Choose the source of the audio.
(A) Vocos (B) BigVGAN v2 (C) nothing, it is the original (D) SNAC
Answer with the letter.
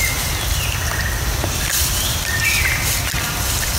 B